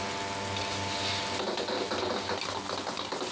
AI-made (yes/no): no